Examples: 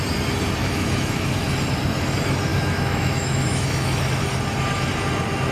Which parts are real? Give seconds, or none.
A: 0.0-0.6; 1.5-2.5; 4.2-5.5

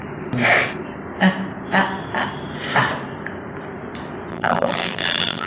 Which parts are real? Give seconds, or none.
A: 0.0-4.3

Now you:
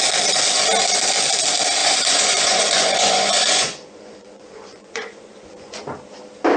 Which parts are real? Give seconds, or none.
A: 0.0-1.8; 5.8-6.6

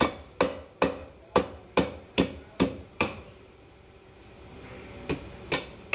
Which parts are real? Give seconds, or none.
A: 0.0-1.0; 3.6-5.9

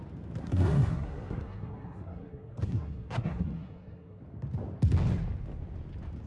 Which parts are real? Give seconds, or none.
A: 0.0-0.4; 4.2-6.3

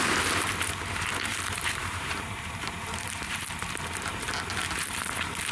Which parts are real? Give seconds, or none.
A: 0.0-1.3; 3.4-5.5

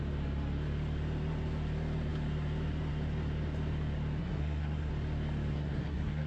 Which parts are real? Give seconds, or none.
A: 0.0-4.2; 4.9-5.5

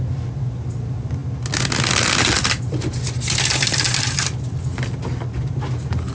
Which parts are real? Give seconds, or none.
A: 0.0-6.1